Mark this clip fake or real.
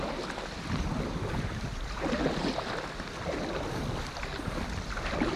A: real